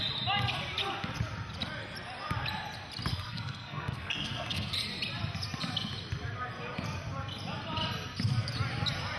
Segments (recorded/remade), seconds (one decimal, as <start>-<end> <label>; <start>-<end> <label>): 0.0-3.1 recorded; 3.1-4.7 remade; 4.7-9.2 recorded